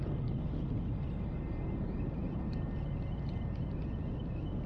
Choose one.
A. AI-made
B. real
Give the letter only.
B